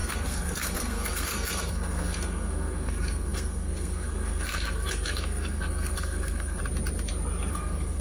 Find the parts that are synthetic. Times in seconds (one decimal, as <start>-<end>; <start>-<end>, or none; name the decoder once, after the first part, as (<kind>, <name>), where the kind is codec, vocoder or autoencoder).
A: 0.0-6.6 (codec, SNAC); 7.5-8.0